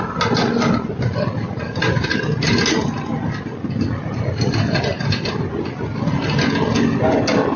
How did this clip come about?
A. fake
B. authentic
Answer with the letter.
B